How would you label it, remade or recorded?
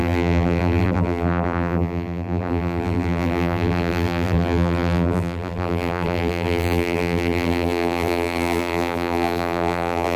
remade